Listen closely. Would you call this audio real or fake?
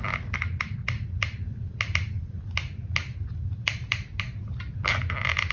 real